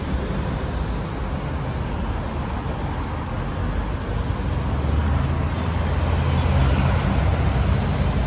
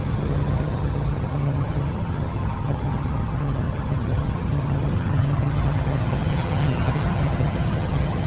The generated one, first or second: second